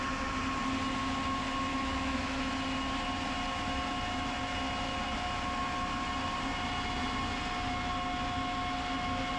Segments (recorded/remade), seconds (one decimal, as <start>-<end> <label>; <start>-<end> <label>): 0.0-1.7 recorded; 1.7-2.5 remade; 2.5-9.4 recorded

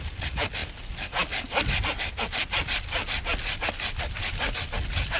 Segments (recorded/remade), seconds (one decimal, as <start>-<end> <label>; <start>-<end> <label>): 0.0-5.2 recorded

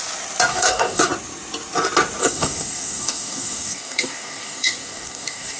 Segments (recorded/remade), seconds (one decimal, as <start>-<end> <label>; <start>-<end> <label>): 0.0-0.5 recorded; 0.5-1.1 remade; 1.1-2.2 recorded; 2.2-5.6 remade

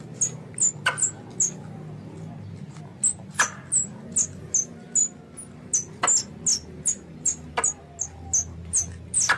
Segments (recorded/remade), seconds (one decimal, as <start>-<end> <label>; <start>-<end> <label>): 0.0-9.4 recorded

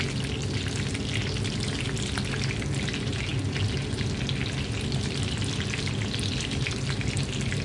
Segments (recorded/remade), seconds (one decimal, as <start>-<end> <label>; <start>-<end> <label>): 0.0-7.6 recorded